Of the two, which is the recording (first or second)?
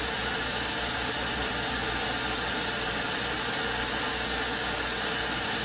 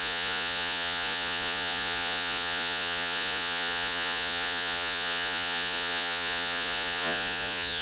first